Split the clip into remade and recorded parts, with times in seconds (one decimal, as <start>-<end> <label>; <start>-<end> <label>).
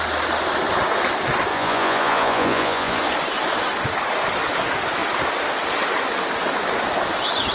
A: 0.0-1.5 recorded; 1.5-3.0 remade; 3.0-7.5 recorded